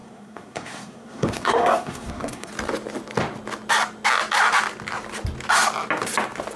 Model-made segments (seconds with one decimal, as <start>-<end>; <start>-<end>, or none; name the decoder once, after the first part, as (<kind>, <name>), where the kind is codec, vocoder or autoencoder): 0.0-2.5 (codec, SNAC)